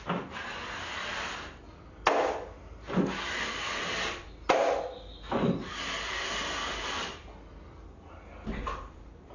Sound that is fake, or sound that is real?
real